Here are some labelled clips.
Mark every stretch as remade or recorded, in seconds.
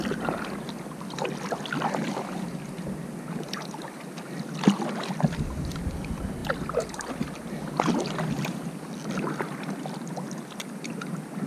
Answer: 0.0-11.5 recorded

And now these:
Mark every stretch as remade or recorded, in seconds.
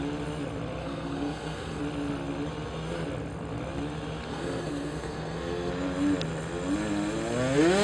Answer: 0.0-0.8 recorded; 0.8-1.8 remade; 1.8-4.3 recorded; 4.3-5.7 remade; 5.7-7.8 recorded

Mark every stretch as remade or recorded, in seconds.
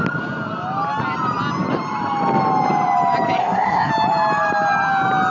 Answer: 0.0-3.4 recorded; 3.4-3.9 remade; 3.9-5.3 recorded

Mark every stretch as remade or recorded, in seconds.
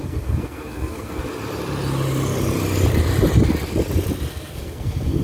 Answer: 0.0-1.2 remade; 1.2-4.3 recorded; 4.3-5.2 remade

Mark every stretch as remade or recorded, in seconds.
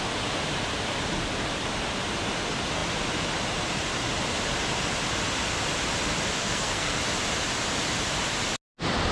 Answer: 0.0-6.4 recorded; 6.4-7.0 remade; 7.0-9.1 recorded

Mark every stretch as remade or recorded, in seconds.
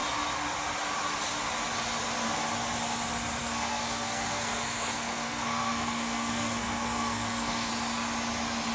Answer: 0.0-3.4 recorded; 3.4-7.7 remade; 7.7-8.7 recorded